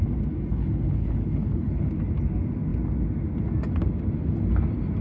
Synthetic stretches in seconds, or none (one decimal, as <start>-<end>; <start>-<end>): 0.5-1.9

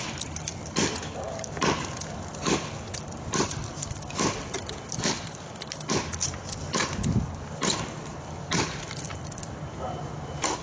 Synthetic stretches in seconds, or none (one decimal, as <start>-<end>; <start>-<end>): none

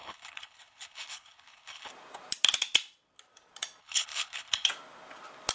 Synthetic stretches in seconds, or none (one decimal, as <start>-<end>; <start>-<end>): 0.0-1.9; 3.8-4.7